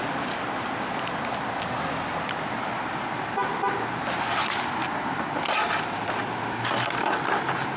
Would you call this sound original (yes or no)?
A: yes